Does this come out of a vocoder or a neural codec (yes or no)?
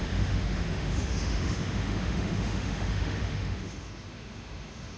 yes